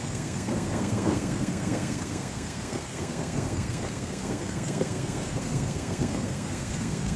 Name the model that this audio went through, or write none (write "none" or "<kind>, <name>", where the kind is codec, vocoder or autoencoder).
codec, SNAC